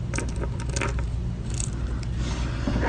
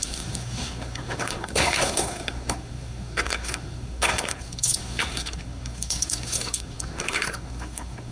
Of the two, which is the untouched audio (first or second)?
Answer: first